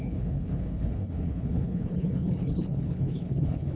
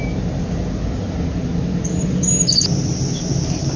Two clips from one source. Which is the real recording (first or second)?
second